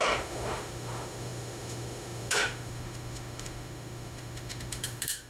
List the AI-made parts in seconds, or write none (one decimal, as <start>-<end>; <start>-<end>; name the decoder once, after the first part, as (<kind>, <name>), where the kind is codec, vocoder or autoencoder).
0.0-5.3 (autoencoder, DAC-VAE)